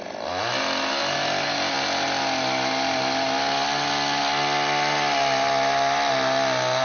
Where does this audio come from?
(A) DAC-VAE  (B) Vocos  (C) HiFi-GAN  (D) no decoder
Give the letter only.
D